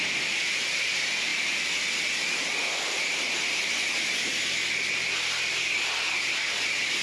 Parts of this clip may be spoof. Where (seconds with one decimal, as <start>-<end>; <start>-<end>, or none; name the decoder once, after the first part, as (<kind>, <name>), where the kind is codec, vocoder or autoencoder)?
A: none